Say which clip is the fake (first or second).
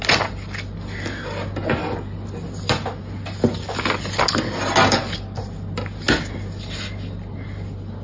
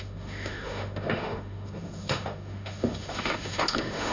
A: second